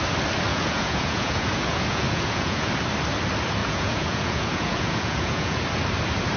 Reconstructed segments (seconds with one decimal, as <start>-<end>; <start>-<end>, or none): 0.5-2.7; 3.6-5.6

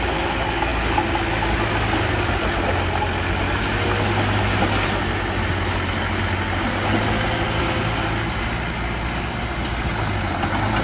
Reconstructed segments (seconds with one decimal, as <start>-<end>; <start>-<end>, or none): none

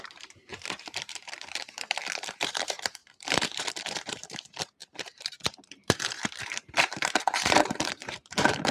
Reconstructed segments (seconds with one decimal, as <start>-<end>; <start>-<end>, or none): 0.0-8.7

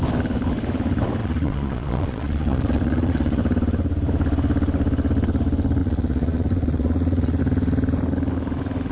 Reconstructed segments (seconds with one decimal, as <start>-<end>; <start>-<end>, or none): 1.2-3.4; 5.8-7.4

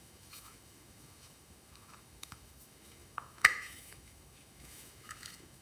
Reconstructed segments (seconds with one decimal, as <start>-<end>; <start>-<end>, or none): 0.0-5.6

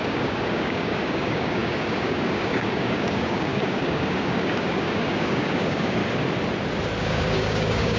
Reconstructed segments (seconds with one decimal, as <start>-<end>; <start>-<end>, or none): 0.0-6.0; 7.0-8.0

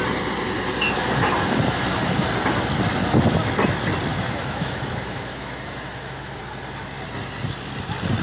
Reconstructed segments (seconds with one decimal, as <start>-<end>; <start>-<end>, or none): 4.1-6.4